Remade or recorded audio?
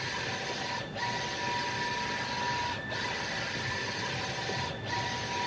recorded